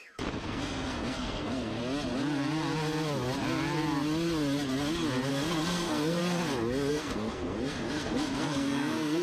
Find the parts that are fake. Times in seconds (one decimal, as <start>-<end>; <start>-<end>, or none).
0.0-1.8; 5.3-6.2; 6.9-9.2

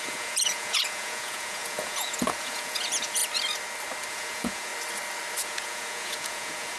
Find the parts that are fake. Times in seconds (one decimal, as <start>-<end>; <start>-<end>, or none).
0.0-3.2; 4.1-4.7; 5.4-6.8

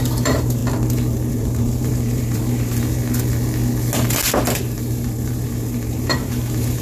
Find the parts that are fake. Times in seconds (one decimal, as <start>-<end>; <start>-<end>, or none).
0.0-0.6; 1.3-3.0; 4.6-6.8

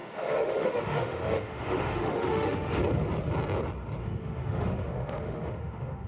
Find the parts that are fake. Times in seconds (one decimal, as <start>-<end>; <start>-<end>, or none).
0.0-2.8; 4.0-6.1

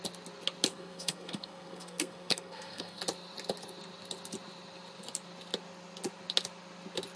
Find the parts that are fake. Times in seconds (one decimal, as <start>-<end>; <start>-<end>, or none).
0.7-3.0

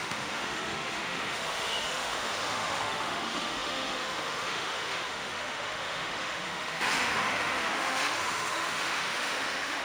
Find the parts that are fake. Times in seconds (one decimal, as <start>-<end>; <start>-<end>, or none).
0.0-9.8

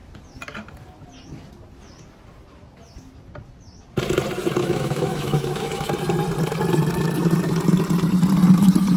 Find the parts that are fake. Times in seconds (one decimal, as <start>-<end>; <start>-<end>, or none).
4.6-5.9

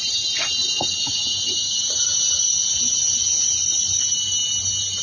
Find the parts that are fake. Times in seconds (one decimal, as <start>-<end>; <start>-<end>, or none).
0.6-3.6